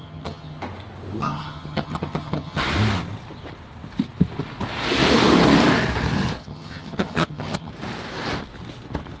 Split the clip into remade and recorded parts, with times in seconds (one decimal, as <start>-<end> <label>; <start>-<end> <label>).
0.0-0.6 remade; 0.6-1.2 recorded; 1.2-2.6 remade; 2.6-6.4 recorded; 6.4-7.7 remade; 7.7-9.2 recorded